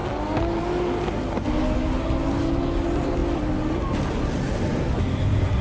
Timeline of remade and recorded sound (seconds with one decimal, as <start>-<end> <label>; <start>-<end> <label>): 0.0-5.6 recorded